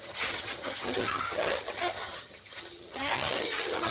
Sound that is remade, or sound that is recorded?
remade